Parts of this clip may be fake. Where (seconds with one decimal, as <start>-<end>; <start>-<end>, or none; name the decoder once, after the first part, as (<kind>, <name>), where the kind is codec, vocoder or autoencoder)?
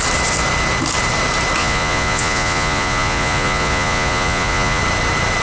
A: 1.6-4.8 (vocoder, Vocos)